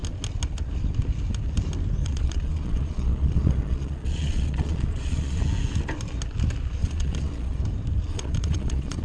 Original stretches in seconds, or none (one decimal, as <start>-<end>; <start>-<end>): 0.0-2.0; 5.4-6.8; 7.6-8.1